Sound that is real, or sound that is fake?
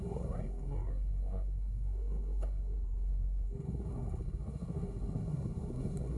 fake